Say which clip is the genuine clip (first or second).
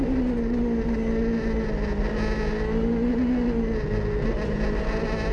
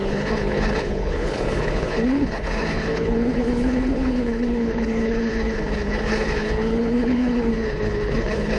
first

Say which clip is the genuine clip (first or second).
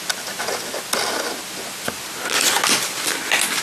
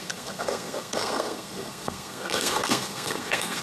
first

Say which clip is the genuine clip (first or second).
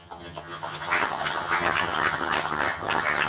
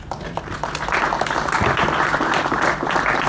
second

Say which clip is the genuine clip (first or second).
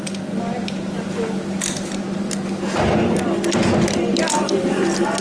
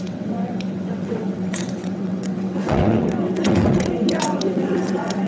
first